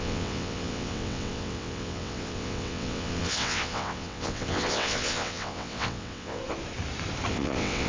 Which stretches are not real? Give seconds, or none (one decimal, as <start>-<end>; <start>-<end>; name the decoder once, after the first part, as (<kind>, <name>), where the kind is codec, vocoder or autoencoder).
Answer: 0.0-6.4 (vocoder, WaveNeXt); 7.3-7.9